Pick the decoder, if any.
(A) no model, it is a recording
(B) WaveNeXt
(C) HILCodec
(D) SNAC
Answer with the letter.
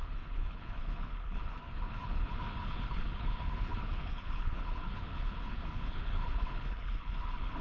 C